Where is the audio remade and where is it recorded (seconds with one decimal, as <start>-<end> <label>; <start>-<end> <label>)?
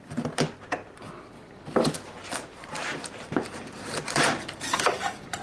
0.0-2.2 recorded; 2.2-5.4 remade